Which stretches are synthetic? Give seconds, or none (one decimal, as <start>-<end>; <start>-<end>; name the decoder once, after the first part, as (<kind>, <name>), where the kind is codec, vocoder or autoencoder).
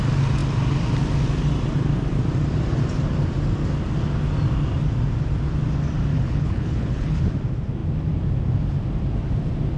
6.1-7.2 (codec, HILCodec)